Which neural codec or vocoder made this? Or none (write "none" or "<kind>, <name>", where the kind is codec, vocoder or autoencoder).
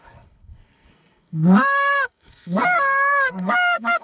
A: codec, SNAC